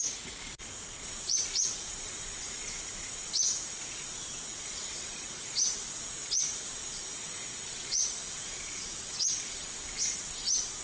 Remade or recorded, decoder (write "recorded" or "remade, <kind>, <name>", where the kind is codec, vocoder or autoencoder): remade, vocoder, Vocos